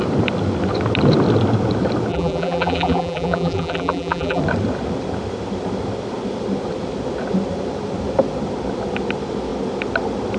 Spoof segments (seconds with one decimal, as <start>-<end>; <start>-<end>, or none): 2.1-4.4